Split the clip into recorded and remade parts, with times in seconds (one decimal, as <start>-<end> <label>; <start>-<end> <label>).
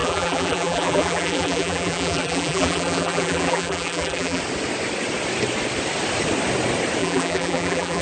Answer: 0.0-4.4 remade; 4.4-7.0 recorded; 7.0-8.0 remade